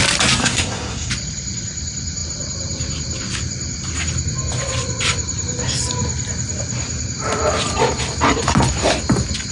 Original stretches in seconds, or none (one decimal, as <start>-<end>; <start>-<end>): 0.0-0.4; 1.1-9.5